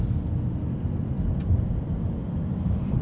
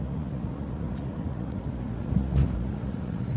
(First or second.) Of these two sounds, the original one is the first